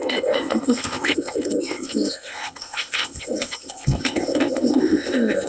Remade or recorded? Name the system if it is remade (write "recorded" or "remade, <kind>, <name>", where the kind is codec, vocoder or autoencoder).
remade, codec, ZipCodec